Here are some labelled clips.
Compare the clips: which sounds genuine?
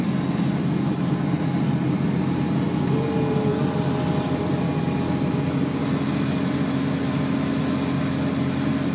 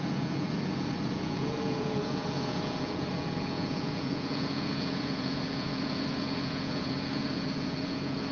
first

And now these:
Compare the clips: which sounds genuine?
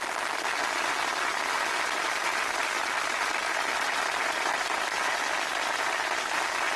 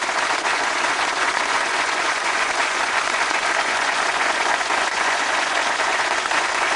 first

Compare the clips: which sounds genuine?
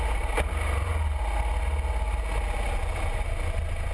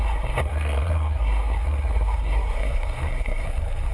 first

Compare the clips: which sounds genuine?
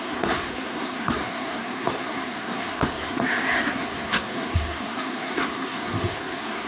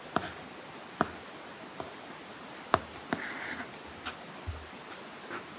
second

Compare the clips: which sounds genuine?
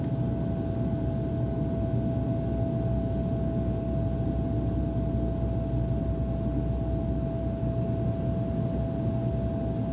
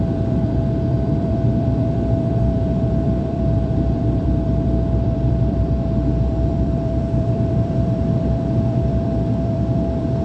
first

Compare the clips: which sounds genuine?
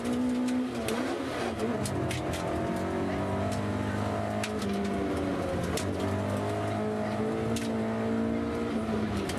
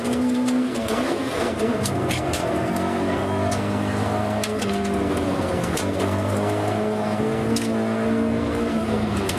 first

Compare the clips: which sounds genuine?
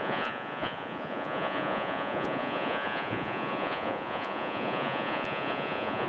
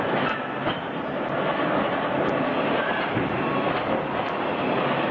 second